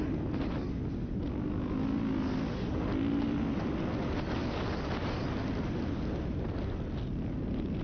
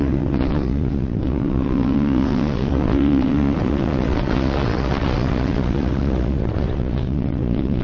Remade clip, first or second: second